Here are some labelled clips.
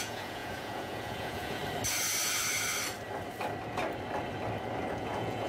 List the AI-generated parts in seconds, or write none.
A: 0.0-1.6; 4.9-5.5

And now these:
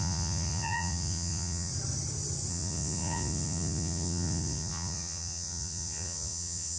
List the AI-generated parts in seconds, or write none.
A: 0.0-1.7; 2.5-6.8

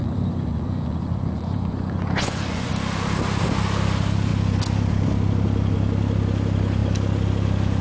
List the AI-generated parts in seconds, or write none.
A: 0.0-2.7

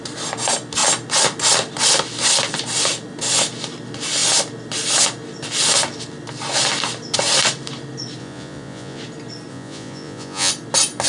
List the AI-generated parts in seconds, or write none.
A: 8.2-9.0; 9.5-10.5